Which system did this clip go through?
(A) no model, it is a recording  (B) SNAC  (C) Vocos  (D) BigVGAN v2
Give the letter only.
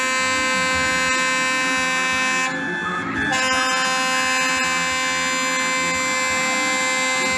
A